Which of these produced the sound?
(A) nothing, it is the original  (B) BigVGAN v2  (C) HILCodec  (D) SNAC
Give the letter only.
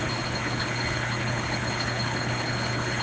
C